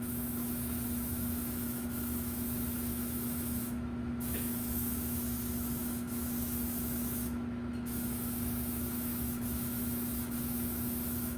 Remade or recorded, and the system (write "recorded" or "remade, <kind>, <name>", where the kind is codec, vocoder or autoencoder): remade, autoencoder, DAC-VAE